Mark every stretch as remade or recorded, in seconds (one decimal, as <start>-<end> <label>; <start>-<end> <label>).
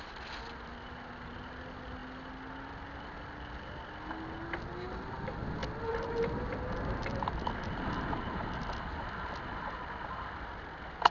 0.0-11.1 recorded